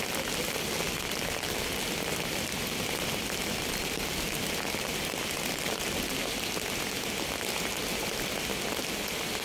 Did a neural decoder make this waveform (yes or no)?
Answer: no